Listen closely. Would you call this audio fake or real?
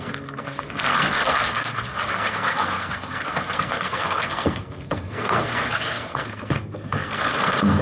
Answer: fake